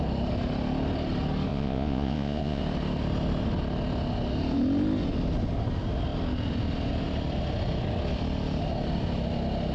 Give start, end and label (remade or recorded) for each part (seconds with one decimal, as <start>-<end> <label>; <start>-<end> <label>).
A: 0.0-1.5 recorded; 1.5-2.6 remade; 2.6-9.7 recorded